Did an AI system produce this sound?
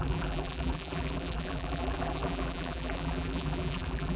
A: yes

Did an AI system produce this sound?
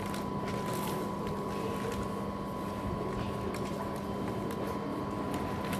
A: no